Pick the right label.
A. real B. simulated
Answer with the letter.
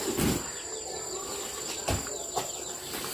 B